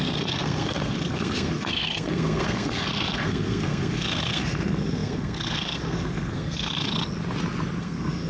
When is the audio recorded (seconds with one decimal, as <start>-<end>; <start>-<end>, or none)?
6.9-7.8